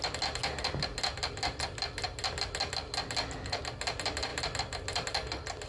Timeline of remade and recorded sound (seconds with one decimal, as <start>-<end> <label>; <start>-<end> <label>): 0.0-5.7 recorded